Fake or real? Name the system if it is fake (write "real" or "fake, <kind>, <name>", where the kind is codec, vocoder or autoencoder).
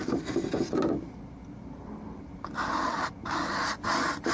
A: real